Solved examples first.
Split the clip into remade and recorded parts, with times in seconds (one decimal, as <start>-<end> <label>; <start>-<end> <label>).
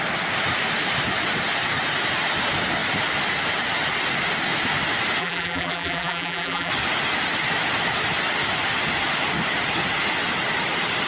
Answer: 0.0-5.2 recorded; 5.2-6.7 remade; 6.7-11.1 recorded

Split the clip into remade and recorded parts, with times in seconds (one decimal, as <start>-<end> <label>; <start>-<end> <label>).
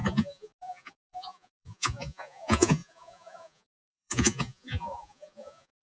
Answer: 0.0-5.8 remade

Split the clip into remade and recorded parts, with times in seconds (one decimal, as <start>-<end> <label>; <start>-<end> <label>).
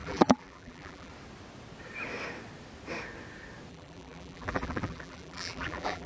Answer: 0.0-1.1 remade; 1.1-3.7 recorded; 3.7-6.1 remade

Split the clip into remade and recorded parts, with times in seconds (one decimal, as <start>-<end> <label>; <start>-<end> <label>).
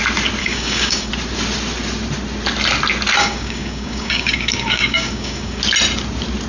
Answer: 0.0-0.4 recorded; 0.4-1.1 remade; 1.1-3.2 recorded; 3.2-5.6 remade; 5.6-6.5 recorded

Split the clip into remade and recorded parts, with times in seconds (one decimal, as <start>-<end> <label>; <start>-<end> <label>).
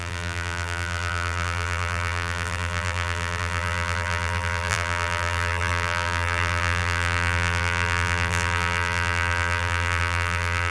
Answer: 0.0-10.7 remade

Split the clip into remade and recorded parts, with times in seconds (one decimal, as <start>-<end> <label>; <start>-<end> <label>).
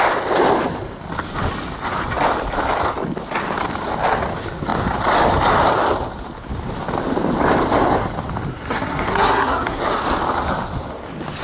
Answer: 0.0-8.5 recorded; 8.5-9.8 remade; 9.8-11.4 recorded